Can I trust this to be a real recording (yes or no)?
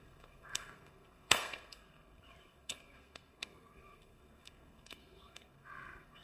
no